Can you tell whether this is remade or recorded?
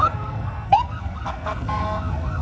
remade